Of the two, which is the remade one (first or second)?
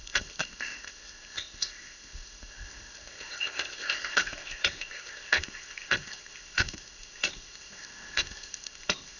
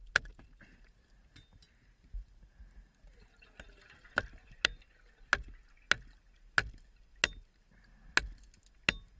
first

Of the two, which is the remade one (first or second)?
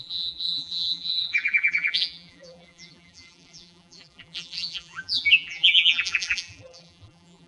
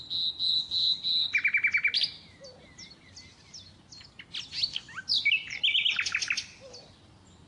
first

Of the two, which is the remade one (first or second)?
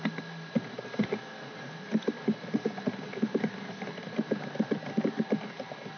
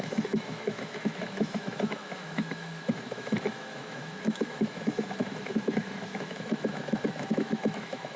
second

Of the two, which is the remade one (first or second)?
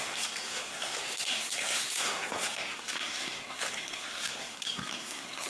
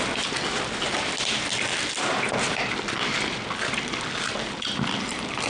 first